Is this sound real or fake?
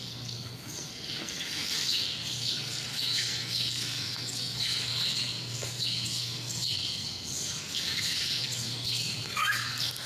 fake